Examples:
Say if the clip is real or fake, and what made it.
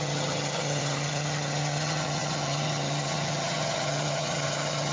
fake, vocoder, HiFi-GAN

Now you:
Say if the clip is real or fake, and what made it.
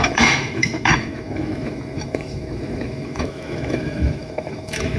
fake, autoencoder, DAC-VAE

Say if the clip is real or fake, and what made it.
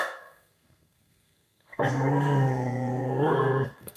fake, codec, SNAC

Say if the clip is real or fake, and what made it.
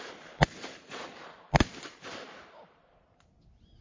real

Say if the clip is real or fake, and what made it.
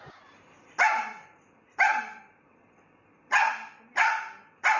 real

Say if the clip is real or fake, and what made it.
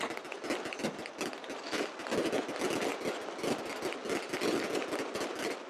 real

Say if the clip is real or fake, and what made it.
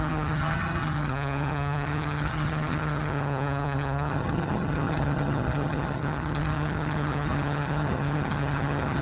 fake, vocoder, HiFi-GAN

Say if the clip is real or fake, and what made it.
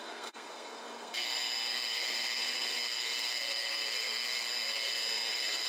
fake, codec, SNAC